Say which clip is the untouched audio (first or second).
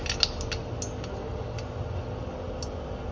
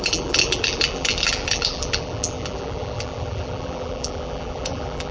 first